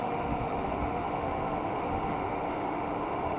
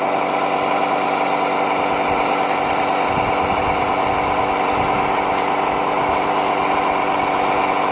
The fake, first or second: first